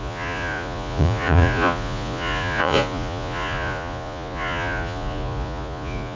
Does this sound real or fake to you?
fake